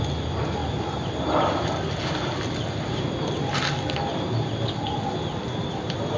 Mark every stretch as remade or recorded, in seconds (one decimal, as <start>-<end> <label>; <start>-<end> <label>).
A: 0.0-6.2 recorded